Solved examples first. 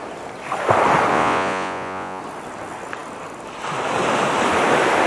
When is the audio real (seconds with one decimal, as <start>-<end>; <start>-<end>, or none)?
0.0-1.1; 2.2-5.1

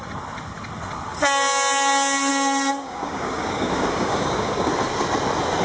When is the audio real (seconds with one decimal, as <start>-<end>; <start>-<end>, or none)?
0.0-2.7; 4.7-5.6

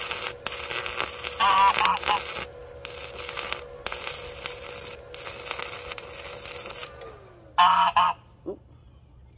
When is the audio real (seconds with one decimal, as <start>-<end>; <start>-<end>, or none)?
0.0-9.4